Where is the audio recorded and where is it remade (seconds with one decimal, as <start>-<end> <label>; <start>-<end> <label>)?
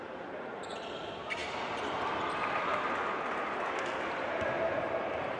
0.0-5.4 recorded